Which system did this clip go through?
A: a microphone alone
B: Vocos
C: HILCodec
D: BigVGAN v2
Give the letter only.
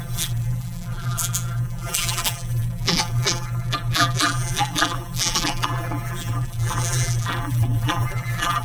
D